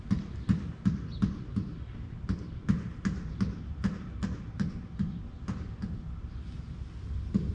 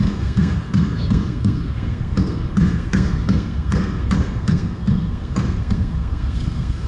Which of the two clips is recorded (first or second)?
first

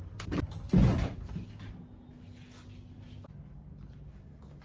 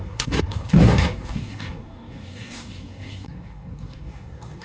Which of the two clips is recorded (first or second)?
first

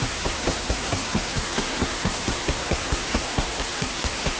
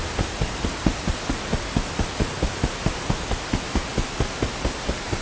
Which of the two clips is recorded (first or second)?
second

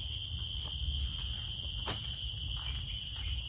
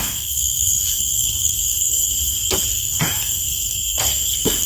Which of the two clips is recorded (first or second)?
first